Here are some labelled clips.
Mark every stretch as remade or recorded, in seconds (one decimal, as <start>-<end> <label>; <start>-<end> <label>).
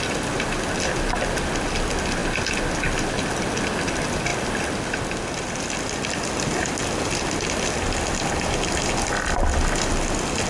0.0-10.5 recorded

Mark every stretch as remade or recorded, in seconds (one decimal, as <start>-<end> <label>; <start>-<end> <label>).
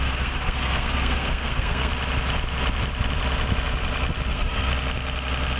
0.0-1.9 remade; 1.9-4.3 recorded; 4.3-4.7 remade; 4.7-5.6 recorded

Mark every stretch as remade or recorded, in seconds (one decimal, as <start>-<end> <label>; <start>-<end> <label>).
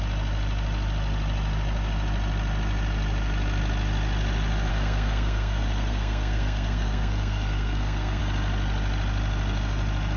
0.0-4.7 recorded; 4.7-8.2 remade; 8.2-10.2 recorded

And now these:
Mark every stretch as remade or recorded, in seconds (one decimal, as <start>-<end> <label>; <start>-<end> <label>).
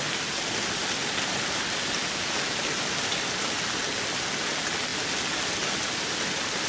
0.0-6.7 recorded